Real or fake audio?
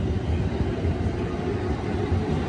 real